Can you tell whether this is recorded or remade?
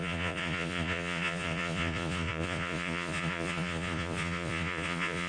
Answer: remade